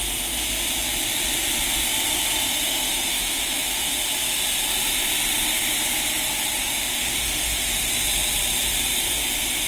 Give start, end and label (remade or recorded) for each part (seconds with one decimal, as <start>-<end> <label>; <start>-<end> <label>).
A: 0.0-2.5 recorded; 2.5-4.0 remade; 4.0-6.6 recorded; 6.6-7.9 remade; 7.9-9.7 recorded